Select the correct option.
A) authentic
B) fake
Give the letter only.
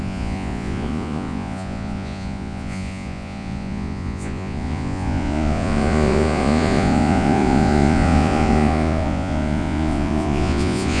B